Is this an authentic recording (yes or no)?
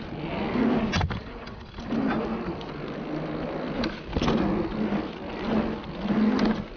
yes